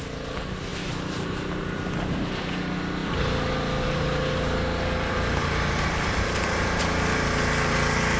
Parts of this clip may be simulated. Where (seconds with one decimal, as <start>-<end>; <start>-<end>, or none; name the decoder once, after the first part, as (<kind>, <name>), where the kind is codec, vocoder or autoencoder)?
0.7-2.1 (vocoder, BigVGAN v2); 3.0-6.8